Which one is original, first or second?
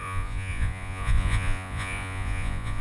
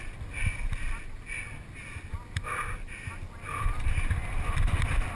second